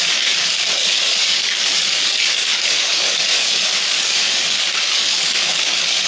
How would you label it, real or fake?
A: fake